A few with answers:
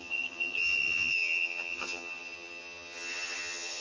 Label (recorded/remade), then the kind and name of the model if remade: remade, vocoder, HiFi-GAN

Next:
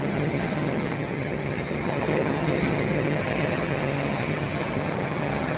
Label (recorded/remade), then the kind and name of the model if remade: remade, vocoder, HiFi-GAN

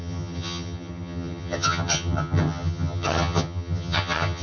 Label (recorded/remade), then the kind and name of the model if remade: remade, vocoder, HiFi-GAN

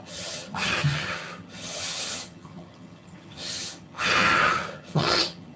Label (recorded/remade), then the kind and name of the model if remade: remade, vocoder, HiFi-GAN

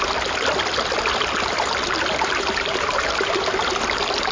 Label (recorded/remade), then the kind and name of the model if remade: recorded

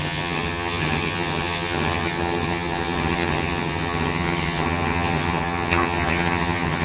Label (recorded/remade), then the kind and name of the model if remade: remade, vocoder, HiFi-GAN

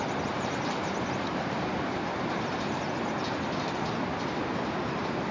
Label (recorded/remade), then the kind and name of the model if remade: recorded